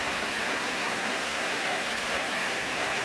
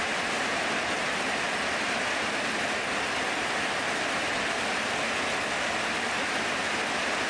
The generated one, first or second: first